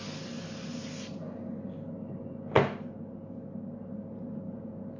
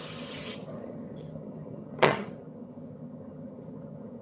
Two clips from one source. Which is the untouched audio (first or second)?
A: first